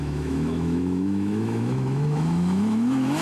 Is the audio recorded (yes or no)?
no